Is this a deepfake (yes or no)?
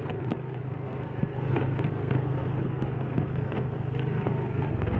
yes